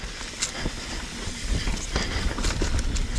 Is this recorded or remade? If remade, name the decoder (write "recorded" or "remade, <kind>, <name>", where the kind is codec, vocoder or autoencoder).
recorded